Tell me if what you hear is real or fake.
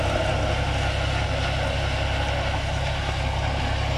real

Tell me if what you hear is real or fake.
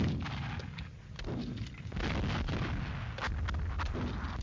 real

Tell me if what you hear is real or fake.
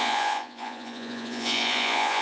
fake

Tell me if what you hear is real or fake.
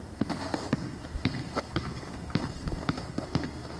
fake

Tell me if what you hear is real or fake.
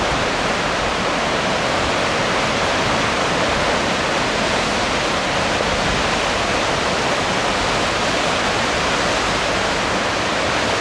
real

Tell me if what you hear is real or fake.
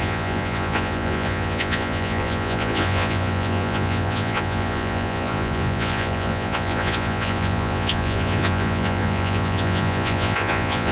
fake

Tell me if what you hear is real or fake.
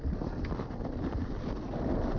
real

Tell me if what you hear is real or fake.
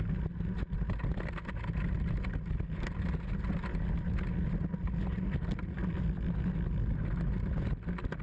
real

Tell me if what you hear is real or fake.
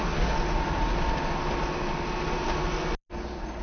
real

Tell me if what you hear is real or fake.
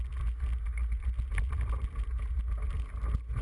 real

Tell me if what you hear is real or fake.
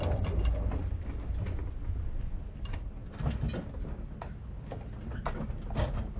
real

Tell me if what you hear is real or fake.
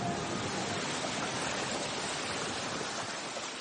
real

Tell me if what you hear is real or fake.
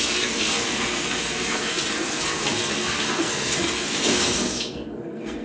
fake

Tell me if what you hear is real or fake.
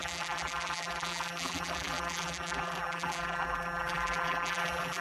fake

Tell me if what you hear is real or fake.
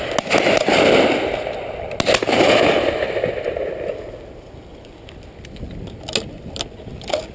real